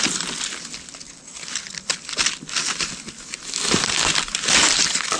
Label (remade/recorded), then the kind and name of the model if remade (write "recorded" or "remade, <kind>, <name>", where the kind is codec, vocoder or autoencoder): recorded